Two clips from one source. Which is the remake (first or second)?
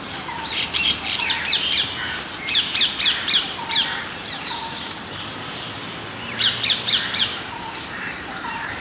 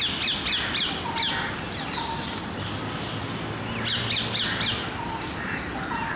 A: first